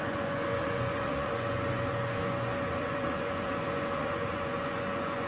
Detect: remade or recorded remade